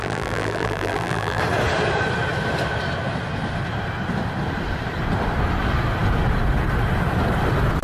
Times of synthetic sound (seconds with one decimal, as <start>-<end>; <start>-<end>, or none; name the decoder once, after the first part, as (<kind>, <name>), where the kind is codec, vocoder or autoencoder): 0.0-1.4 (vocoder, BigVGAN v2)

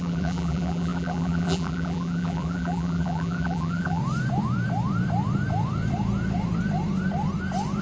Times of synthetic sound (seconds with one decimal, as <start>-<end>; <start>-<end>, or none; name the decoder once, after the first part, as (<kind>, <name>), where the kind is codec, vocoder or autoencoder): 0.0-4.0 (vocoder, BigVGAN v2)

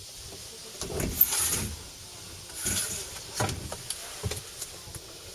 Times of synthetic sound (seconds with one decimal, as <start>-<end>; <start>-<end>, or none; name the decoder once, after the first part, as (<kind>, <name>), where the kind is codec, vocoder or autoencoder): none

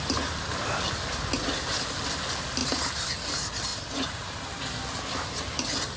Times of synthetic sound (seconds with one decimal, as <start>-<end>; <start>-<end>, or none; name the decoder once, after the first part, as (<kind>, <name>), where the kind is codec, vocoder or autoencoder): 2.6-3.1 (vocoder, BigVGAN v2); 3.7-4.6

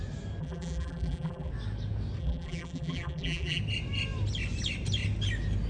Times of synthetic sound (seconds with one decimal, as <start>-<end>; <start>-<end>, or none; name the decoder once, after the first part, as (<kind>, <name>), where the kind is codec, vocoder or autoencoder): 0.4-1.5 (vocoder, BigVGAN v2); 2.2-3.6

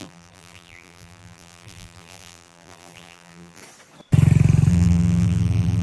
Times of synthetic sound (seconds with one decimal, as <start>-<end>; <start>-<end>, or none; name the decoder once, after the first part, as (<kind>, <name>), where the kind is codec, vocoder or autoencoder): 0.0-3.6 (vocoder, BigVGAN v2); 4.7-5.8

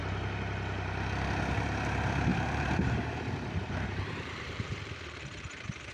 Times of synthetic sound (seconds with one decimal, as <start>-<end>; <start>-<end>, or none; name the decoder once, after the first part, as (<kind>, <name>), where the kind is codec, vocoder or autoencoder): 2.3-5.9 (vocoder, BigVGAN v2)